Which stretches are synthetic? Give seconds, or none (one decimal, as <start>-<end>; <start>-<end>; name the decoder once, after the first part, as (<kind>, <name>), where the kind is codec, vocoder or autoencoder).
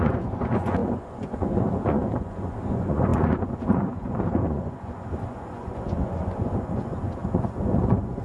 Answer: 0.0-8.2 (vocoder, Vocos)